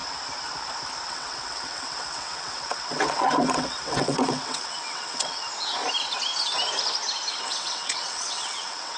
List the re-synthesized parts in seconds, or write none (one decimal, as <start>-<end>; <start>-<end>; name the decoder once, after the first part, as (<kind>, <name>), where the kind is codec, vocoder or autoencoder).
1.1-5.4 (vocoder, WaveNeXt); 7.3-9.0